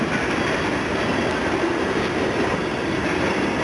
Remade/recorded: remade